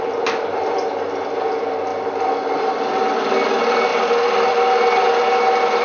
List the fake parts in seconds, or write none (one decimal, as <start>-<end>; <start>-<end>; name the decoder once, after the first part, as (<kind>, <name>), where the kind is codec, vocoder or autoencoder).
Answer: none